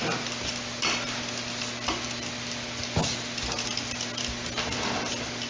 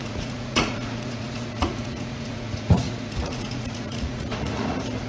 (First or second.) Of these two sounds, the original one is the first